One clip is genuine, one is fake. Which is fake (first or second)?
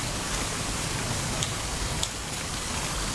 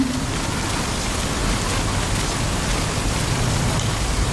first